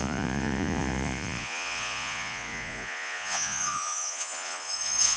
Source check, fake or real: fake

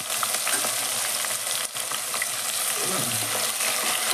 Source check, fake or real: real